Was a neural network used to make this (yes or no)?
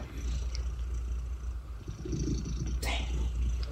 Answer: no